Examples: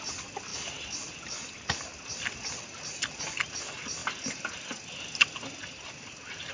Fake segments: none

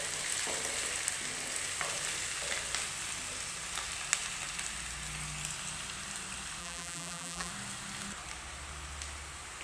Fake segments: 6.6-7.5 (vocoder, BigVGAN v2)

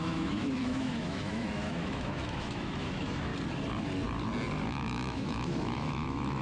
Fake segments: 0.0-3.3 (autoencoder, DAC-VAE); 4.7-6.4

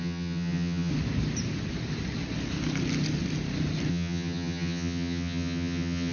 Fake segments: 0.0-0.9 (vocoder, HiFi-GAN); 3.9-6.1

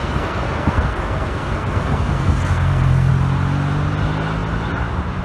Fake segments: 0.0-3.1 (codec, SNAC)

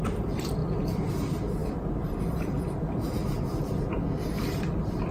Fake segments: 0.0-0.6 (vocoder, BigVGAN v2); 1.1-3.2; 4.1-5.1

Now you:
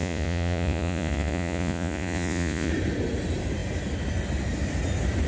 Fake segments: 0.0-2.7 (vocoder, Vocos)

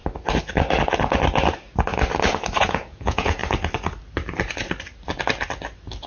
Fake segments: 2.6-3.4 (vocoder, Vocos)